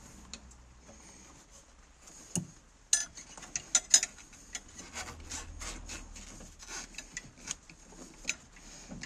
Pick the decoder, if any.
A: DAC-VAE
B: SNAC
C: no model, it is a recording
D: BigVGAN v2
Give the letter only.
C